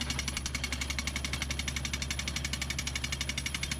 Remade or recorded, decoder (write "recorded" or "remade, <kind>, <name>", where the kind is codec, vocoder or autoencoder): recorded